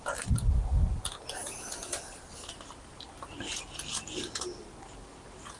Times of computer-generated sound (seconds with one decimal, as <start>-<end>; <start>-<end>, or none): none